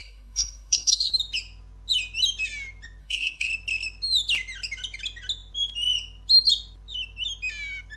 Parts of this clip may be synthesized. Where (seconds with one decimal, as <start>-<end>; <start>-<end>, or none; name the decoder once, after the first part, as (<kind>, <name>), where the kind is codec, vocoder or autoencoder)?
0.0-1.1 (codec, SNAC); 3.0-3.5